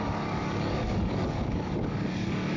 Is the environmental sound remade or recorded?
remade